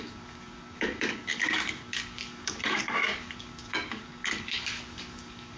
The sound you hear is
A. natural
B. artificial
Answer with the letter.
B